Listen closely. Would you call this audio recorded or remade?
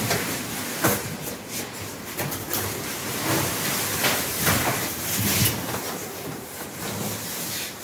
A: recorded